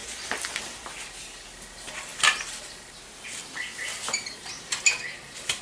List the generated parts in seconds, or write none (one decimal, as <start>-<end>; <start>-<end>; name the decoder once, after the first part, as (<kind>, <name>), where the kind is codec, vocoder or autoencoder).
none